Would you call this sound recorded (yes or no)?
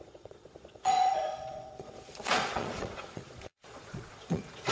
no